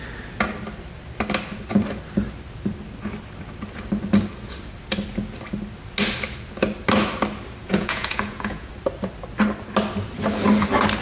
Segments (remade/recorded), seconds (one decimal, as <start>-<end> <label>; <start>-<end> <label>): 0.0-7.6 recorded; 7.6-8.7 remade; 8.7-11.0 recorded